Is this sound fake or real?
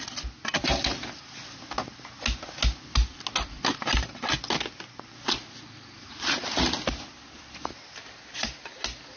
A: real